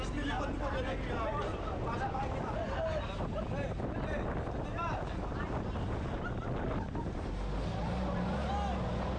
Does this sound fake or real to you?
real